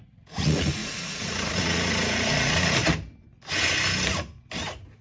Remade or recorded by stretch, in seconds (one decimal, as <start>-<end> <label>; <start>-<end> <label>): 0.0-2.8 remade; 2.8-5.0 recorded